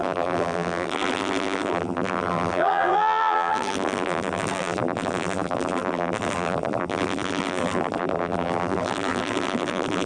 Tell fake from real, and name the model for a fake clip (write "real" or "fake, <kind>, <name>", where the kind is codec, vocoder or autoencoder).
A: fake, vocoder, BigVGAN v2